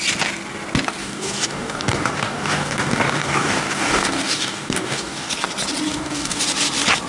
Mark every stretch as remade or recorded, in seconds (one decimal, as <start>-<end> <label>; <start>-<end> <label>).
0.0-1.0 recorded; 1.0-5.3 remade; 5.3-5.9 recorded; 5.9-6.4 remade; 6.4-7.1 recorded